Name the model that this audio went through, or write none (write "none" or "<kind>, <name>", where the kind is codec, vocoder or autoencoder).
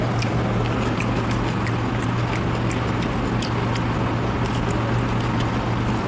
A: none